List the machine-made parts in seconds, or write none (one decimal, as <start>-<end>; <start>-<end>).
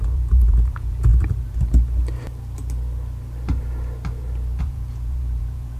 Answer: 0.0-1.1; 4.6-5.8